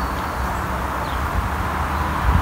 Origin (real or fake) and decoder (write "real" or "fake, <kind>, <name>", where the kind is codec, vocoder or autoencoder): real